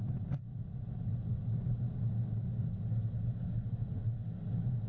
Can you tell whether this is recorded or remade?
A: recorded